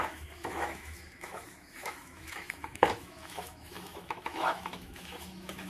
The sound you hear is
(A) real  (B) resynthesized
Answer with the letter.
B